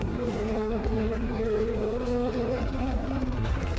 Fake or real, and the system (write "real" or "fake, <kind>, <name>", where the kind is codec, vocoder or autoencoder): fake, codec, SNAC